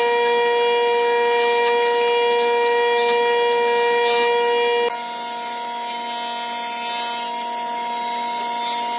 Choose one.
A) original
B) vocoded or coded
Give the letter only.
A